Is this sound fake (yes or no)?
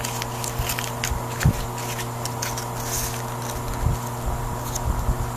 no